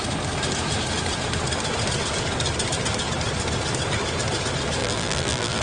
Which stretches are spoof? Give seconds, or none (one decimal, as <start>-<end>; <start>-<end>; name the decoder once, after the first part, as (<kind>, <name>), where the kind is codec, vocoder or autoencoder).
4.8-5.6 (vocoder, BigVGAN v2)